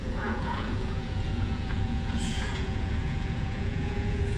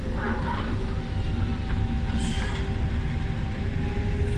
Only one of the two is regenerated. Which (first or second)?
first